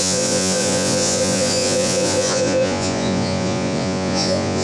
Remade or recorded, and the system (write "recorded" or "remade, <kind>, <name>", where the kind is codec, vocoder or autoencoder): remade, vocoder, Vocos